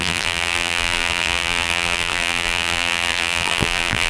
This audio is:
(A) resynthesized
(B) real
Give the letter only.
A